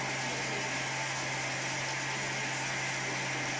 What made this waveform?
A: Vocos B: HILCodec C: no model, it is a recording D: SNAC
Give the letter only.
C